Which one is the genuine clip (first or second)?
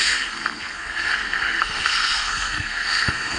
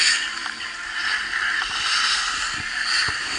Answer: second